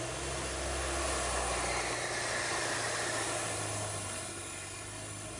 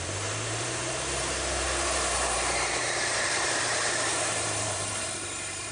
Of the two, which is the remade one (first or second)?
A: second